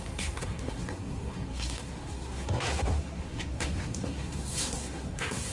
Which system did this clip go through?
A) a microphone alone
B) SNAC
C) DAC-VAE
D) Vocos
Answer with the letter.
B